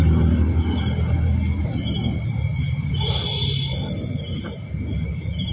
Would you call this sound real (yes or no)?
yes